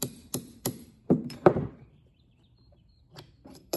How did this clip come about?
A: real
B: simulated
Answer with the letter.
B